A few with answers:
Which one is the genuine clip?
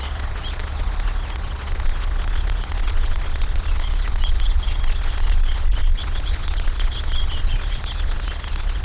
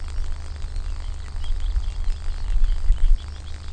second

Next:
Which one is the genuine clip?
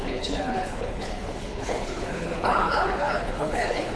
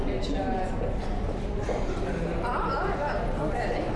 second